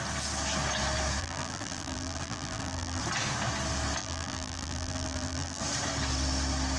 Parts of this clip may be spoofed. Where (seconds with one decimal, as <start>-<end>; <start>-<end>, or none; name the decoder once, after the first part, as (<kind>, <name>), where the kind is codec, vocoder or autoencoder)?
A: 1.2-3.0 (vocoder, BigVGAN v2); 4.0-5.6